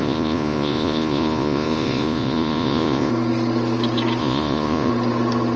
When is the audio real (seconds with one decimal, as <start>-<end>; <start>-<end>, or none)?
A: 3.1-4.2; 4.9-5.6